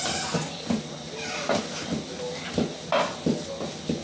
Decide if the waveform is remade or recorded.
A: recorded